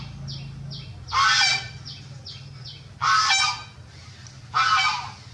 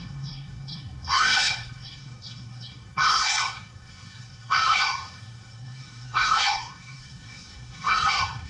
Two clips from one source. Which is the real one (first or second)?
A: first